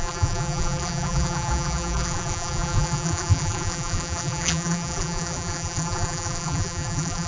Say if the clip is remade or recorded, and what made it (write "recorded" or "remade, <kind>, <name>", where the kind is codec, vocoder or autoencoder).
remade, vocoder, BigVGAN v2